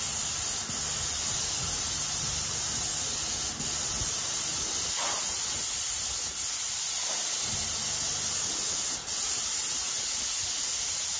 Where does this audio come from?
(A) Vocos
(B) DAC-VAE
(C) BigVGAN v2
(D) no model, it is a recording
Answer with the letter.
D